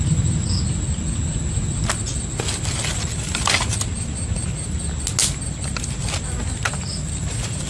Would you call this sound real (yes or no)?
yes